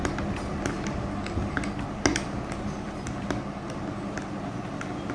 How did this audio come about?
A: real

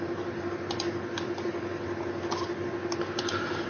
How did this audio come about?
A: real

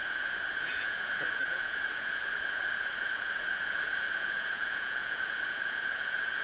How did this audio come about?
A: fake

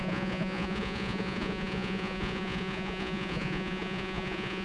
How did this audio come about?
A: fake